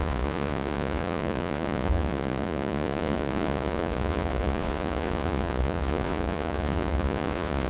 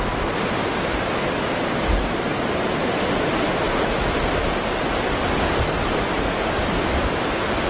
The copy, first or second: first